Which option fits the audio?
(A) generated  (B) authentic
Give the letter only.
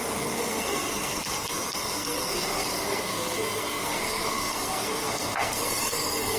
A